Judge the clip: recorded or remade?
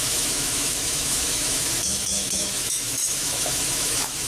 remade